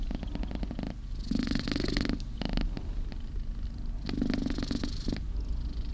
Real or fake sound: real